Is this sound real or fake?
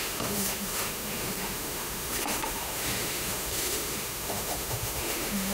fake